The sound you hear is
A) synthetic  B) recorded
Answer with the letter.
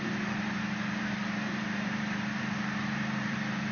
A